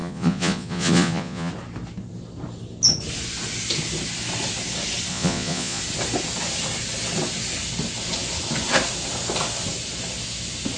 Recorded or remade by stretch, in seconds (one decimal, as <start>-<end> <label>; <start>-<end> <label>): 0.0-1.5 remade; 1.5-5.1 recorded; 5.1-5.8 remade; 5.8-10.8 recorded

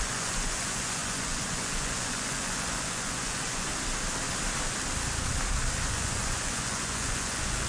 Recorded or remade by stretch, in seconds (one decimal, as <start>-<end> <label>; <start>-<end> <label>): 0.0-3.7 remade; 3.7-5.9 recorded; 5.9-7.7 remade

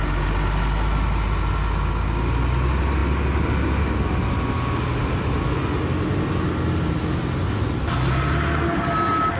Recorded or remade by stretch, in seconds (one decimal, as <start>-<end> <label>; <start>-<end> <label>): 0.0-9.4 recorded

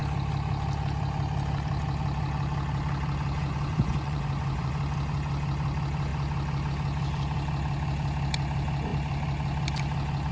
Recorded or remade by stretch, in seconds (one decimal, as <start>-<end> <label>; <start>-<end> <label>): 0.0-3.5 recorded; 3.5-4.7 remade; 4.7-10.3 recorded